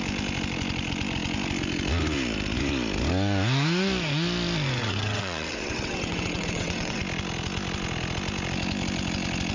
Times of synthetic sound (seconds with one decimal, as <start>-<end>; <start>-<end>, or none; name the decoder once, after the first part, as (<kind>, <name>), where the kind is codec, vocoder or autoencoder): 4.8-7.0 (vocoder, WaveNeXt)